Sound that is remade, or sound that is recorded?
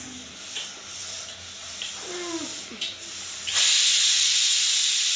recorded